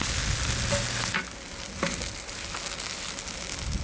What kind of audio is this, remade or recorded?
recorded